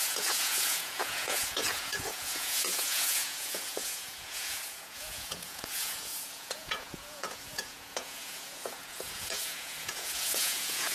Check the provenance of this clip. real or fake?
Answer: fake